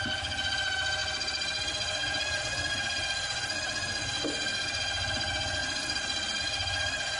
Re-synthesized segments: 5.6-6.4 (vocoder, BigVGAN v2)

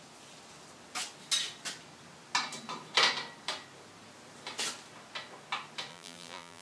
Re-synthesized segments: 5.9-6.6 (vocoder, BigVGAN v2)

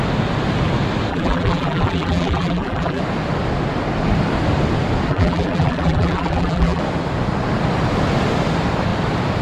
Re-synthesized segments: 1.1-3.0 (vocoder, BigVGAN v2); 5.1-6.8

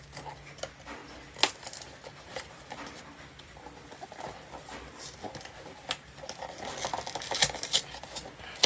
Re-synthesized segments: none

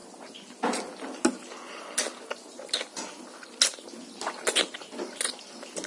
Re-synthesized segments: none

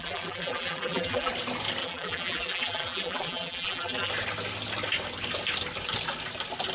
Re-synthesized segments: 0.0-1.3 (vocoder, BigVGAN v2); 1.8-4.1

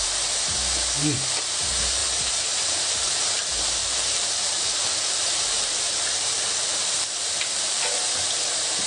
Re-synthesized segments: 0.0-2.0 (vocoder, BigVGAN v2); 3.2-8.9